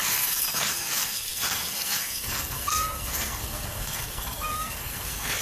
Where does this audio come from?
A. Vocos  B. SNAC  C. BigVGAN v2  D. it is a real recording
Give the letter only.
B